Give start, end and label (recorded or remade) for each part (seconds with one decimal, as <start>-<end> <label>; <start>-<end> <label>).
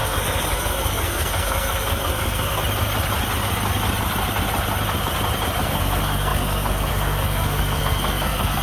0.0-2.6 remade; 2.6-5.6 recorded; 5.6-8.6 remade